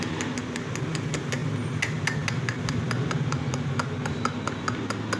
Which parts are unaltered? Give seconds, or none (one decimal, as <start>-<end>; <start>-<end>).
0.0-5.2